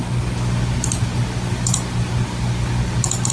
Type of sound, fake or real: real